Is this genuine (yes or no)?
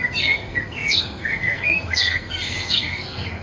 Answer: no